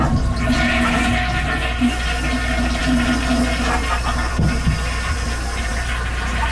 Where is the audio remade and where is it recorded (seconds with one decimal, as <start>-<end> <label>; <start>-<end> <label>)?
0.0-6.5 recorded